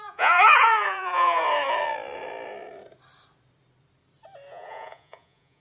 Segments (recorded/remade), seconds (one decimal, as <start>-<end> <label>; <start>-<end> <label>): 0.0-1.4 remade; 1.4-4.5 recorded; 4.5-5.6 remade